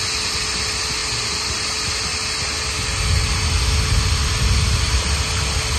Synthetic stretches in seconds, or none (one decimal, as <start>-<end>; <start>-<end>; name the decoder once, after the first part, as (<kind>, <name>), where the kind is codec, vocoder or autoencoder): none